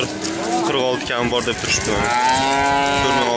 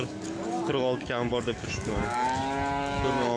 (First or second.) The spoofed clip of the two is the second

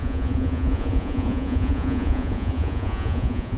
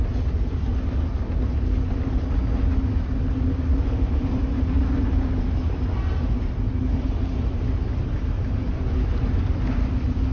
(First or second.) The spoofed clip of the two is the first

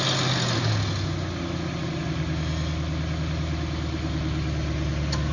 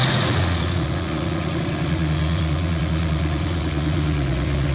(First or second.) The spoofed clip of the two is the second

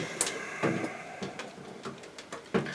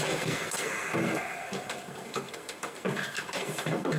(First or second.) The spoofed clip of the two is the second